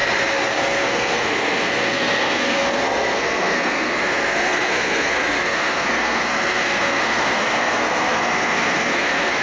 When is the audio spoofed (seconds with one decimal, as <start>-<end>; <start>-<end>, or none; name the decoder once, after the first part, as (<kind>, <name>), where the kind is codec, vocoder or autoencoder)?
0.6-9.4 (codec, SNAC)